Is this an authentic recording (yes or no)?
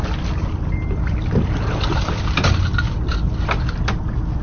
yes